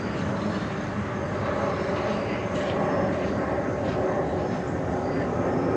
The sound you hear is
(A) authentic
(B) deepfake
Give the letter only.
A